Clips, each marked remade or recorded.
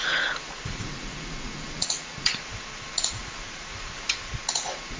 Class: remade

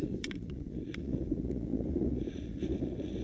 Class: remade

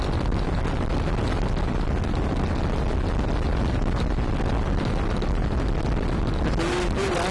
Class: recorded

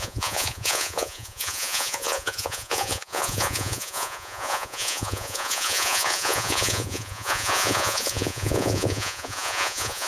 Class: remade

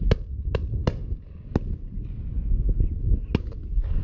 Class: recorded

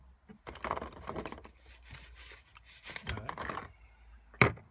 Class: recorded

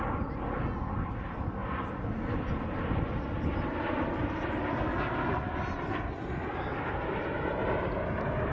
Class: recorded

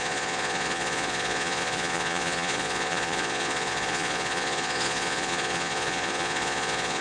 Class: remade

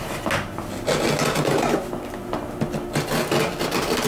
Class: recorded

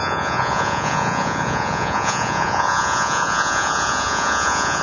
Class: remade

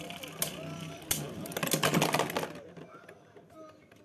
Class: recorded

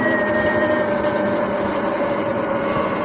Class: recorded